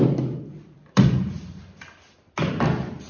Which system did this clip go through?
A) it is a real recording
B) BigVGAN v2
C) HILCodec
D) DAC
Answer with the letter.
B